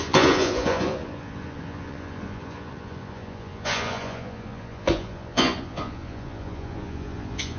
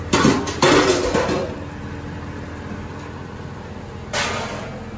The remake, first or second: first